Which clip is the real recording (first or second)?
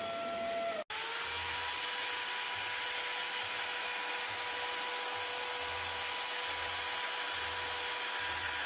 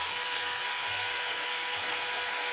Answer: first